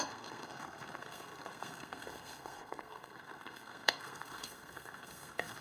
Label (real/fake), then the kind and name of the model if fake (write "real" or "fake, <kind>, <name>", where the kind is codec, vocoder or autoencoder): fake, codec, SNAC